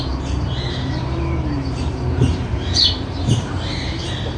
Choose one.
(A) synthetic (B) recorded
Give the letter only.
A